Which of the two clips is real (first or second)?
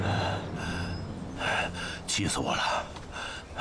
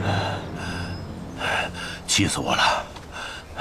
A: second